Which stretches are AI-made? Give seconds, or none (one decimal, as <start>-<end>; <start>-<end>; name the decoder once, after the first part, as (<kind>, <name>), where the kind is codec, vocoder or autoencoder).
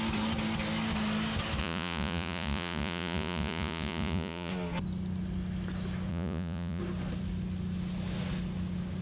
1.6-4.5 (vocoder, Vocos); 6.1-6.8